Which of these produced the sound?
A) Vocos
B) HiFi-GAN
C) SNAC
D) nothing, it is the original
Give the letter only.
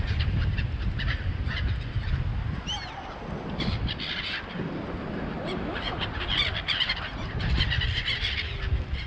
D